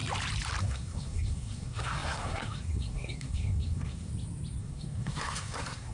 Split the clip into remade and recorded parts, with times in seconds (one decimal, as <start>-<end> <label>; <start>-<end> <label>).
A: 0.0-0.6 recorded; 0.6-4.1 remade; 4.1-4.6 recorded; 4.6-5.9 remade